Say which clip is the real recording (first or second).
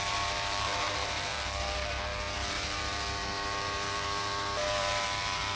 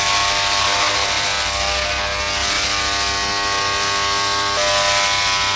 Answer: second